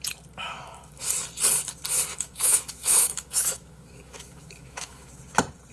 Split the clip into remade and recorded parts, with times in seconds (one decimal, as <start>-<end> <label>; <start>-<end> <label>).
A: 0.0-0.4 recorded; 0.4-1.0 remade; 1.0-2.1 recorded; 2.1-5.2 remade; 5.2-5.7 recorded